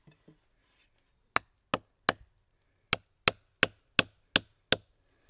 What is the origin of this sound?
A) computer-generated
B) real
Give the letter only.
B